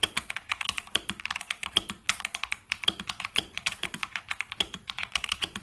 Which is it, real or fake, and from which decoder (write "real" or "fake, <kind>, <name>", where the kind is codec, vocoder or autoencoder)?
fake, vocoder, Vocos